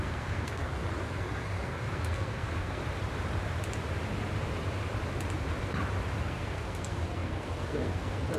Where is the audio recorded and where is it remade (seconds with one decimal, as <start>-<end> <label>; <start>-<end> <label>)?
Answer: 0.0-2.8 remade; 2.8-6.2 recorded; 6.2-8.4 remade